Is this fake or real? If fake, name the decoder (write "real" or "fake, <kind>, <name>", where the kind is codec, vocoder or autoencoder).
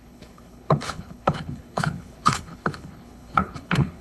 fake, codec, HILCodec